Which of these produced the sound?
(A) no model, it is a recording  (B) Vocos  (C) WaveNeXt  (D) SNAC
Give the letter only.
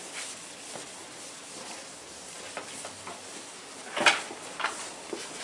A